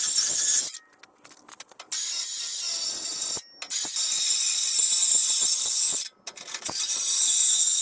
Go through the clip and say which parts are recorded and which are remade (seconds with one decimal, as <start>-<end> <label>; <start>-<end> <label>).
0.0-7.8 recorded